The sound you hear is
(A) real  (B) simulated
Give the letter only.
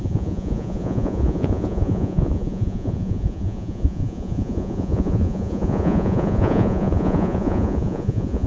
B